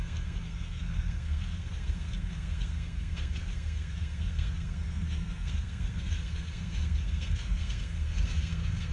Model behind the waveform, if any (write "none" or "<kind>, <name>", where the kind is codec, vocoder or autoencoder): codec, SNAC